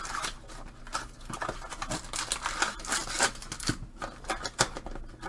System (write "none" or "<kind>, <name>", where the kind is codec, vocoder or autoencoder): none